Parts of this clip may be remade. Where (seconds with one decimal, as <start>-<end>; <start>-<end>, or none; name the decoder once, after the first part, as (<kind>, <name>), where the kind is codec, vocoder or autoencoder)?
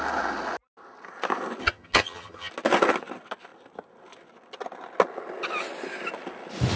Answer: 1.6-2.5 (vocoder, HiFi-GAN)